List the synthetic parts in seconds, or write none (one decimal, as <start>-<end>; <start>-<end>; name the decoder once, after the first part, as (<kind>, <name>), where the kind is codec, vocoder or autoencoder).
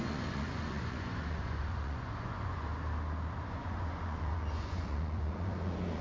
0.0-2.7 (vocoder, Vocos); 3.5-6.0